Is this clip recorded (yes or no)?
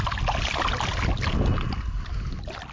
yes